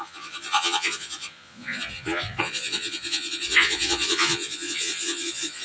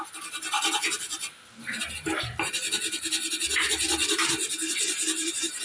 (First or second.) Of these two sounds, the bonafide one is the second